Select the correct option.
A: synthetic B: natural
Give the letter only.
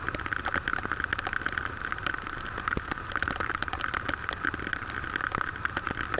B